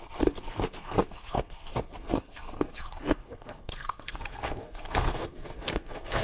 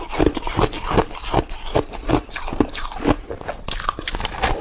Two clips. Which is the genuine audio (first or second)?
second